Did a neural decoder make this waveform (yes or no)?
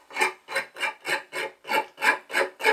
no